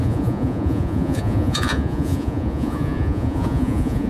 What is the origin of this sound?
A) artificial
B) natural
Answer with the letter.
A